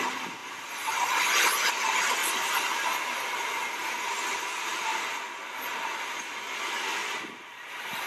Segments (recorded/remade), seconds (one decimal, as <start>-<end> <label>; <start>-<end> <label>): 0.0-0.4 recorded; 0.4-1.7 remade; 1.7-7.0 recorded; 7.0-8.1 remade